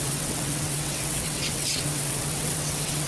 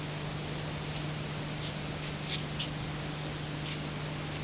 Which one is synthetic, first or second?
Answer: first